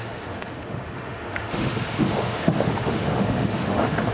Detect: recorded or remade remade